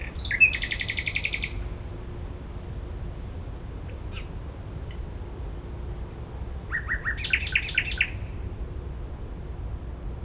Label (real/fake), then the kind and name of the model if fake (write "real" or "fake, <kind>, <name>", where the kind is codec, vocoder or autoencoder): real